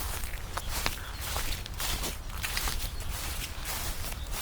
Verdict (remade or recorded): remade